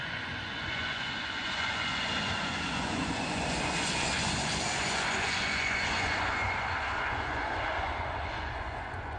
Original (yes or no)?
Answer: no